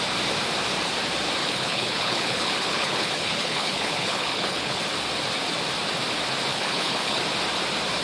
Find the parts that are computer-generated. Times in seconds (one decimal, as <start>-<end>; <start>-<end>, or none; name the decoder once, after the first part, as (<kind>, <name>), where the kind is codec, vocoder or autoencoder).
1.4-4.8 (codec, HILCodec); 6.5-7.2